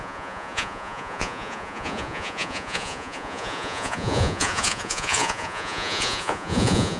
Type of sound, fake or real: fake